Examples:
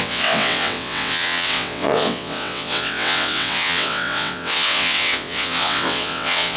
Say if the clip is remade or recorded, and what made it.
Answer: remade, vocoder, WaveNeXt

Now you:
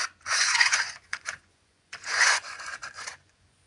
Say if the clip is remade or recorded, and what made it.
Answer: remade, vocoder, Vocos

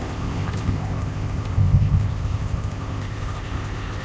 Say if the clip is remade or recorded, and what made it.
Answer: remade, codec, ZipCodec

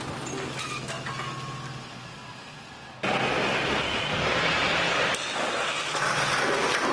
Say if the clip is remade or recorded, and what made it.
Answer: recorded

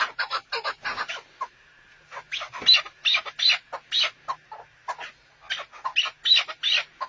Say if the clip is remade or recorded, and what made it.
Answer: recorded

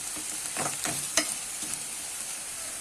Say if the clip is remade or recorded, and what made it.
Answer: remade, vocoder, BigVGAN v2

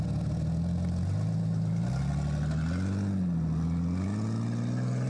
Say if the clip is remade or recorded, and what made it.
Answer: recorded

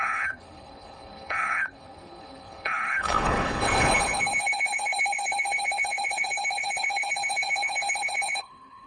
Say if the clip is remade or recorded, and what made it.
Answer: remade, codec, HILCodec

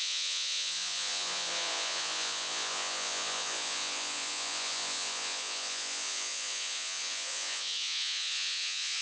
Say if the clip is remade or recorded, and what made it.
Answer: remade, vocoder, Vocos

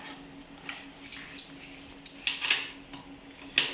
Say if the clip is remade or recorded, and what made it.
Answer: recorded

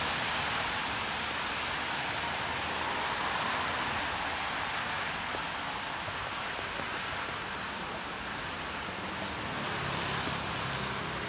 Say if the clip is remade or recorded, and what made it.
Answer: recorded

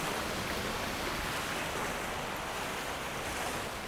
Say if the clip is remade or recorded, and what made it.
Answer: recorded